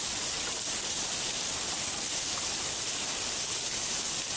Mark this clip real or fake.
real